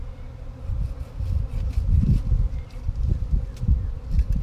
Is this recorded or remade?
remade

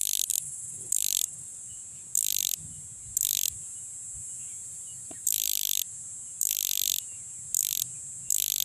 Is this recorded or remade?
recorded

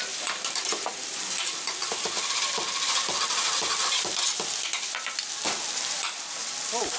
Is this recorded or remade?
remade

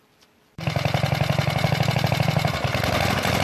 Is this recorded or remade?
remade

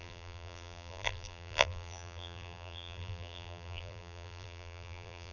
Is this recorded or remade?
remade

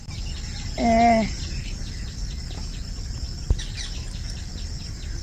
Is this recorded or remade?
recorded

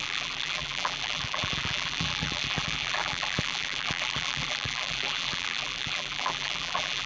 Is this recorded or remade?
remade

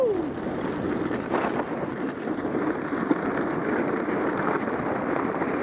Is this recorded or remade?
recorded